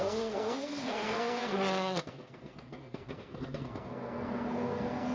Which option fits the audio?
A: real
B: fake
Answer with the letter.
B